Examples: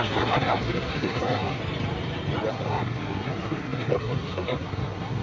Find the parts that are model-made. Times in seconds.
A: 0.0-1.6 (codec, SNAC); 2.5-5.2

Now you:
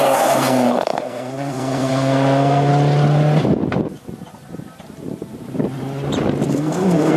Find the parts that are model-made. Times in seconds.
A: 0.0-2.7 (codec, SNAC); 6.5-7.2

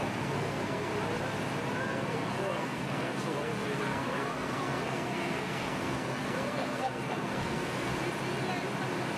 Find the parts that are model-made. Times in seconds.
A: 0.0-0.9 (codec, SNAC); 1.8-7.9

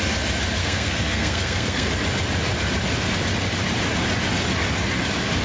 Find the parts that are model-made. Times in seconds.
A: 0.6-1.9 (codec, SNAC)